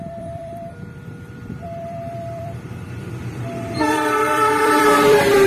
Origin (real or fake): fake